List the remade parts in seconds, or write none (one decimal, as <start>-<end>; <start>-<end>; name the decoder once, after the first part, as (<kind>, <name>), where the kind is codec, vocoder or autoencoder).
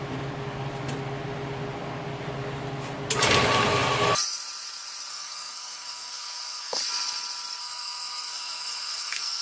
5.1-6.8 (codec, SNAC); 7.6-9.4